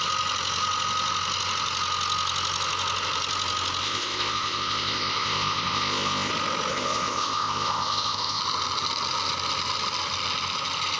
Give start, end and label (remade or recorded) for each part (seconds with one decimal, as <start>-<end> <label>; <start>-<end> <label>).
0.0-3.8 recorded; 3.8-6.3 remade; 6.3-6.7 recorded; 6.7-8.4 remade; 8.4-11.0 recorded